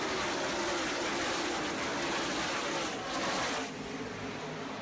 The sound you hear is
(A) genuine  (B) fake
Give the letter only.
A